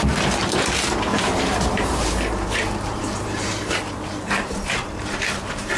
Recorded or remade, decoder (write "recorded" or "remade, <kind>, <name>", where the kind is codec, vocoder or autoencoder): remade, vocoder, BigVGAN v2